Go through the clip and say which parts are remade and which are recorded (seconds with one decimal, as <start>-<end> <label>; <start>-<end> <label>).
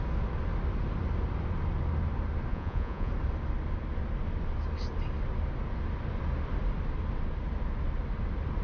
0.0-2.5 recorded; 2.5-3.1 remade; 3.1-8.6 recorded